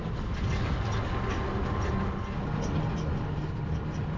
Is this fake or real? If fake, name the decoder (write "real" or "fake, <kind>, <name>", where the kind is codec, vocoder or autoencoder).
real